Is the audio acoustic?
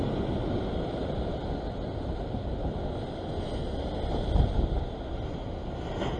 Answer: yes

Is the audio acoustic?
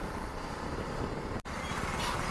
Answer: yes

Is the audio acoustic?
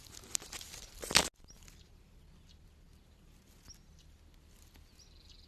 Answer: yes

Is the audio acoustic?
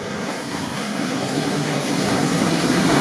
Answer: no